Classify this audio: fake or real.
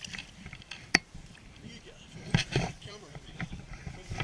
fake